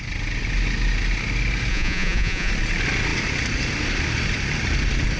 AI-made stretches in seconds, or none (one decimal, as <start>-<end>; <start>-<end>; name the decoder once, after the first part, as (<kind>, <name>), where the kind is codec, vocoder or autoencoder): 1.7-2.5 (vocoder, Vocos)